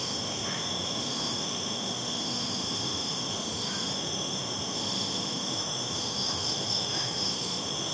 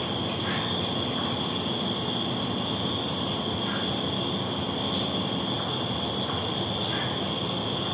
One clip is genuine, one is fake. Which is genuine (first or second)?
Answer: second